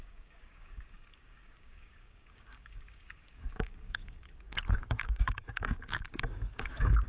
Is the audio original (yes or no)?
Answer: no